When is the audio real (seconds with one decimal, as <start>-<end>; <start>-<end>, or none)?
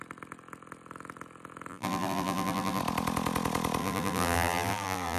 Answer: 0.0-1.7; 2.8-3.8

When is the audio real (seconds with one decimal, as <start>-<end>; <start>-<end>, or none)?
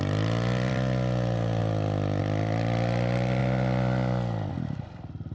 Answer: 1.6-2.2; 3.4-4.5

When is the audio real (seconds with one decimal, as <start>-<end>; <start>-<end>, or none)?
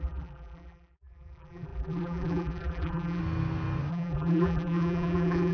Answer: 3.2-3.9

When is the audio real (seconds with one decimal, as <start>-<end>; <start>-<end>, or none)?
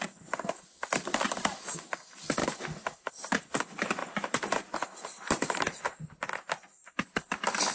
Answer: 0.0-2.4; 3.1-4.0; 6.7-7.7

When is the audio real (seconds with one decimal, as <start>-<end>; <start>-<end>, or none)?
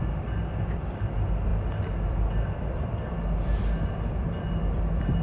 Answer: 1.5-2.1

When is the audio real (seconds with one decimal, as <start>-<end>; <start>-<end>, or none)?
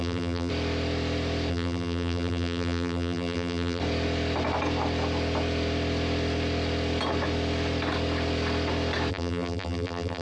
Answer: 0.5-1.5; 3.8-9.1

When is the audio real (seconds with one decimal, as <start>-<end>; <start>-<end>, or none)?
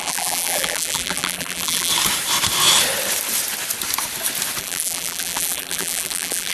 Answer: 1.9-4.6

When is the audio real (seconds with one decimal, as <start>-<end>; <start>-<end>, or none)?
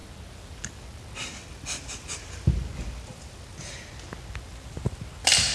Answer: 0.0-5.5